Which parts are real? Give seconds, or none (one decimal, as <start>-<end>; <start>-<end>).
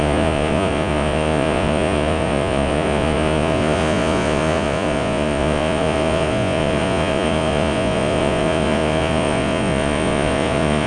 none